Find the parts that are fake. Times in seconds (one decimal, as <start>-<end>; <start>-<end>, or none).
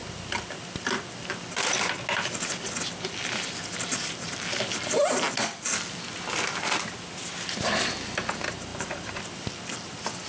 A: 8.7-9.2